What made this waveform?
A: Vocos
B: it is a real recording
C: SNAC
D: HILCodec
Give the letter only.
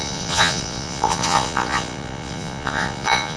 A